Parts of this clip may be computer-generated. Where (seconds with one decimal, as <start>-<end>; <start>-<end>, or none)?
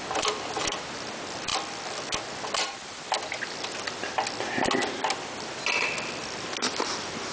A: none